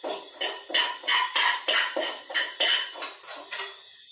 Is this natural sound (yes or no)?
yes